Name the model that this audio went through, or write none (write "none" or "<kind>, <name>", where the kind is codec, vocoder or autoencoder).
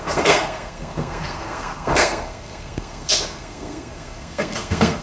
codec, SNAC